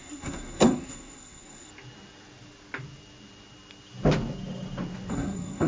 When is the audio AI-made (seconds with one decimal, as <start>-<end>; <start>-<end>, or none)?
0.0-1.7; 5.1-5.7